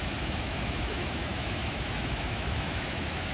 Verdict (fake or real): fake